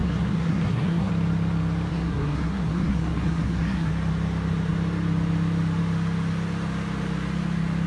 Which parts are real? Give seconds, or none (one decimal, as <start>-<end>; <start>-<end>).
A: 1.1-1.9; 3.9-7.9